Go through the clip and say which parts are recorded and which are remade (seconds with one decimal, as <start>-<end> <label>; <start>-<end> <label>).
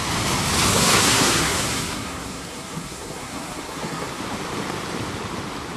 0.0-0.7 recorded; 0.7-4.2 remade; 4.2-5.8 recorded